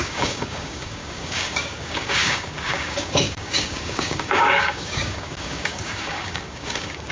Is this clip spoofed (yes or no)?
yes